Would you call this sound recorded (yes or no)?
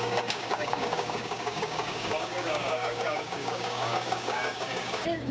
no